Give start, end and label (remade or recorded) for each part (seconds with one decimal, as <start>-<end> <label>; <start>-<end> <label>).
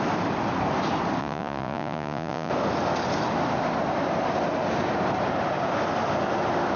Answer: 0.0-1.2 recorded; 1.2-2.5 remade; 2.5-6.8 recorded